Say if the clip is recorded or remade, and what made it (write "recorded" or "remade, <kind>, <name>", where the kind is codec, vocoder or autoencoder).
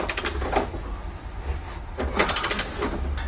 recorded